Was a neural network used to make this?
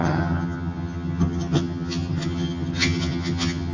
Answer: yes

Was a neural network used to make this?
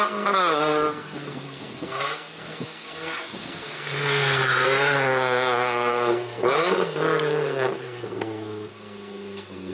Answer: yes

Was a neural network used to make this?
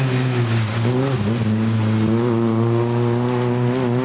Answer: no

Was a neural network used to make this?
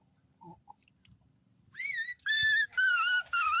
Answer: yes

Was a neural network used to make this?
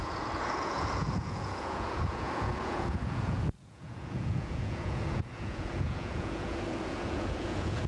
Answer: yes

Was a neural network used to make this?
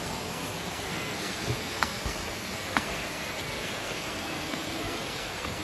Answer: yes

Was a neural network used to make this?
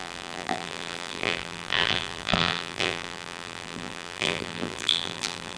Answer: yes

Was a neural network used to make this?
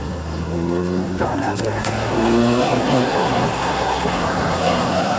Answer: yes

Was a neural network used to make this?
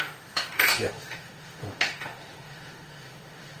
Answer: yes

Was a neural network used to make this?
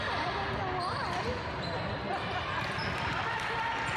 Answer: no